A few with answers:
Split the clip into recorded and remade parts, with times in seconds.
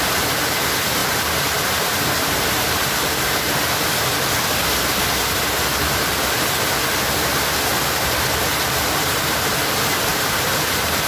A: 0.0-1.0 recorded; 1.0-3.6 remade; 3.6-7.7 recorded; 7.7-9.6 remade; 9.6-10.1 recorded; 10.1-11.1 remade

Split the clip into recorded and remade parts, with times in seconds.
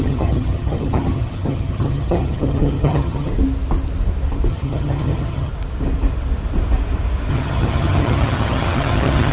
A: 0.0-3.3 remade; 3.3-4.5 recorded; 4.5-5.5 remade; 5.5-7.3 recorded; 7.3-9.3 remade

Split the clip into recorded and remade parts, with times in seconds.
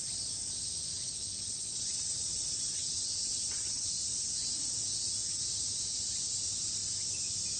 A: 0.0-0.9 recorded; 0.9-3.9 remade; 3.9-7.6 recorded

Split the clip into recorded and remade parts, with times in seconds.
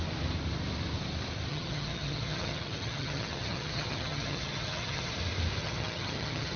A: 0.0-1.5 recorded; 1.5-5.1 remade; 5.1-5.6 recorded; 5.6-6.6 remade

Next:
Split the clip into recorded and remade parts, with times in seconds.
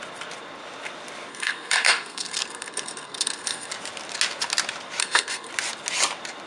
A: 0.0-1.3 recorded; 1.3-3.7 remade; 3.7-5.0 recorded; 5.0-5.5 remade; 5.5-6.5 recorded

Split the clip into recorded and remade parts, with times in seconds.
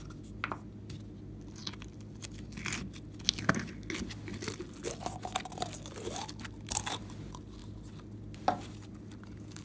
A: 0.0-9.6 recorded